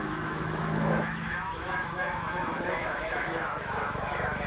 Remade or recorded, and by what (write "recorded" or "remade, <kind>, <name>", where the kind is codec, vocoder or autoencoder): remade, autoencoder, DAC-VAE